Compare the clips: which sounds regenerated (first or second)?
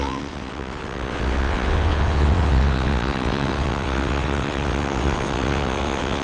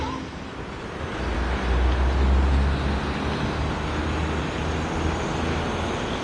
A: first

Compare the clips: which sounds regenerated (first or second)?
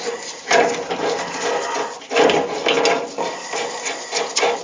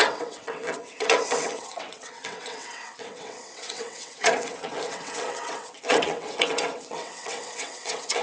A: second